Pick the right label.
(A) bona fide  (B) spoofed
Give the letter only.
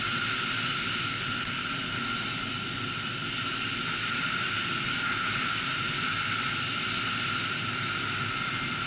A